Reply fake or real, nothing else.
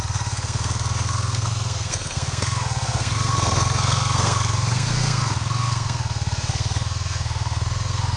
fake